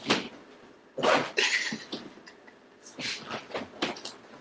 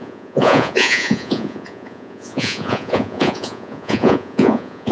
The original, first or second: first